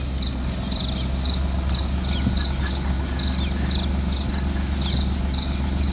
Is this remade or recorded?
recorded